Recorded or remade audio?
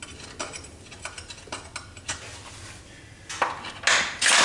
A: recorded